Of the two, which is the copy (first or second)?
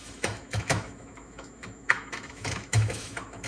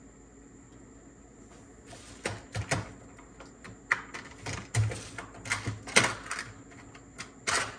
first